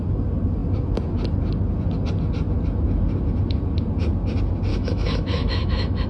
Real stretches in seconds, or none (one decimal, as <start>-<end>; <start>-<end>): 0.0-4.7